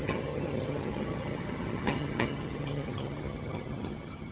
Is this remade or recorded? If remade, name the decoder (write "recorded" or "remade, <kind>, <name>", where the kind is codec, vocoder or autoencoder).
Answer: remade, vocoder, HiFi-GAN